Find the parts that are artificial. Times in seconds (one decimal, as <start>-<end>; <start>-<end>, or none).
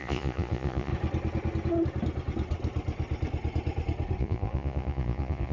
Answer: 0.0-0.9; 4.2-5.5